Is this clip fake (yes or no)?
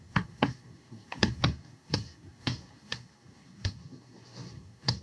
yes